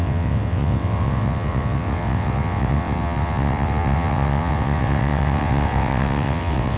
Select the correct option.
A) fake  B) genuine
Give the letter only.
A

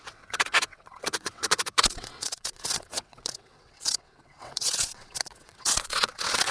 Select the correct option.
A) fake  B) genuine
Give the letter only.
A